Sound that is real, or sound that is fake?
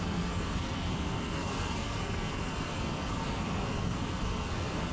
fake